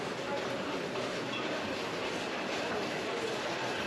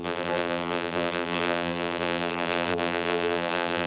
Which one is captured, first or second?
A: first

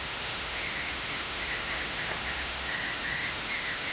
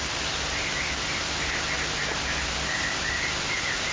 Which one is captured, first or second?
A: second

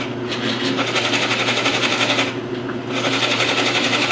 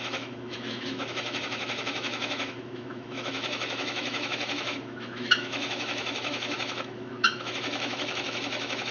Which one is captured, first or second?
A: first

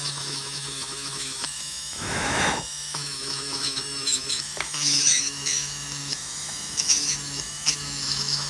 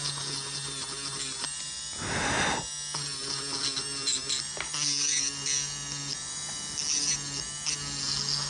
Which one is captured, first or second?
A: second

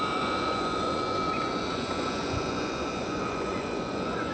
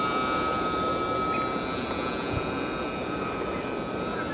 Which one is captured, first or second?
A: second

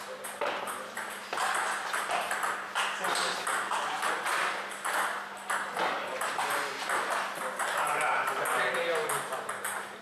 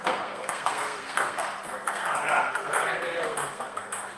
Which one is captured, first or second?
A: first